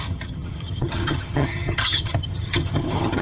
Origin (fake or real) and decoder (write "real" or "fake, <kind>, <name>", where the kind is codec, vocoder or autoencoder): fake, vocoder, HiFi-GAN